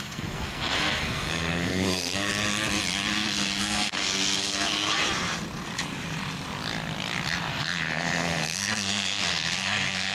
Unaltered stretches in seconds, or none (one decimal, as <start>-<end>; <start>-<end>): 2.3-3.6; 5.0-7.5